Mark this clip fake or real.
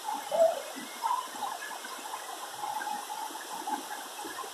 real